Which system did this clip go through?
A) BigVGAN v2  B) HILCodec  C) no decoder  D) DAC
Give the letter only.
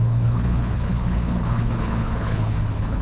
B